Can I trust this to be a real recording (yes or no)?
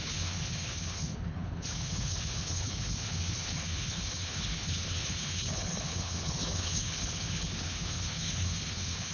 no